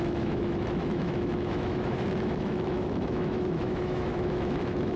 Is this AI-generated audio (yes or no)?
yes